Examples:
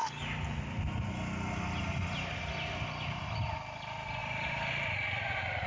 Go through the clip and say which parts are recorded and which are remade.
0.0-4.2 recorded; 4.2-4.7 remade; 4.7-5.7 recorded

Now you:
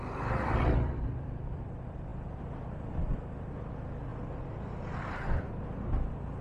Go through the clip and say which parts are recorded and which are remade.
0.0-4.1 remade; 4.1-5.0 recorded; 5.0-6.4 remade

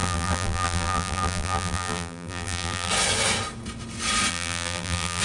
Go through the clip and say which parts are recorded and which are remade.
0.0-2.9 remade; 2.9-4.3 recorded; 4.3-5.2 remade

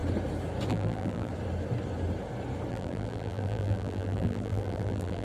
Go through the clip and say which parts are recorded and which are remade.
0.0-0.7 recorded; 0.7-1.3 remade; 1.3-2.7 recorded; 2.7-5.2 remade